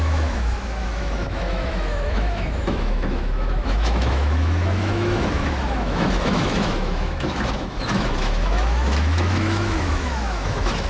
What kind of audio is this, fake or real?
fake